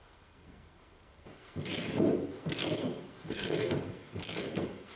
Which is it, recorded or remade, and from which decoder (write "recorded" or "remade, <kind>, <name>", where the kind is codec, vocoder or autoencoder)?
remade, codec, SNAC